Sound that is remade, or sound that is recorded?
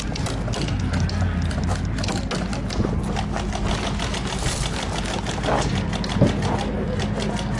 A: recorded